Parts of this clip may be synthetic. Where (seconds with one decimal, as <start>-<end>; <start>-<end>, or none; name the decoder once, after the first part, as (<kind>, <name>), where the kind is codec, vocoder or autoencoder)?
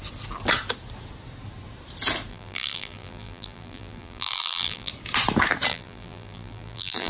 2.3-4.9 (vocoder, BigVGAN v2); 5.7-7.1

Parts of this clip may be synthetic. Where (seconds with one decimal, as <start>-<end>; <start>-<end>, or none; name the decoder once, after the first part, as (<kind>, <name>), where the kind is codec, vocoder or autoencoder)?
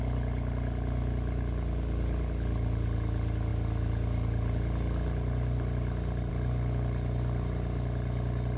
none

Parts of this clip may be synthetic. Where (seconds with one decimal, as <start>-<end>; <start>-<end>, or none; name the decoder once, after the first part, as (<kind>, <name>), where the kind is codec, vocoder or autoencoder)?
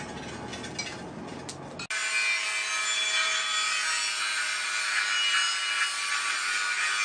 none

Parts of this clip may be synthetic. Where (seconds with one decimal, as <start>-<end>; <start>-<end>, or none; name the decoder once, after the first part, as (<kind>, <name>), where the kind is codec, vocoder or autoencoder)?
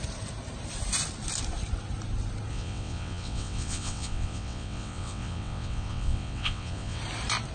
2.5-7.0 (vocoder, WaveNeXt)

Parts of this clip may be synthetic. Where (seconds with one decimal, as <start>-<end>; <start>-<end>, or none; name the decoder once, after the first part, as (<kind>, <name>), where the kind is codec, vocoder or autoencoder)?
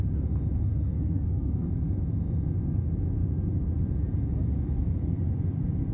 0.7-1.7 (codec, SNAC)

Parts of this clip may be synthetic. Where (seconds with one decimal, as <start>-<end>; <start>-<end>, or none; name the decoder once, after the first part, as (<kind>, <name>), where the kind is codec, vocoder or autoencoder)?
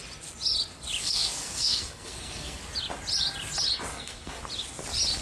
1.0-2.6 (codec, SNAC); 3.9-4.4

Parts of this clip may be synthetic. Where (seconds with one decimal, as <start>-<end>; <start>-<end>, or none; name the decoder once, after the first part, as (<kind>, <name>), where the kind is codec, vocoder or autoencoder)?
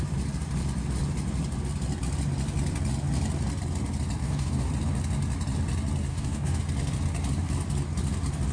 4.2-4.7 (codec, DAC); 6.1-6.6